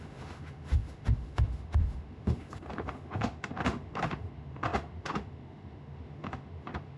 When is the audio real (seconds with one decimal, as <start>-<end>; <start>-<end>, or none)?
none